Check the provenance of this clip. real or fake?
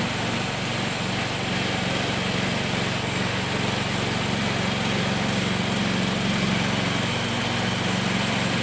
real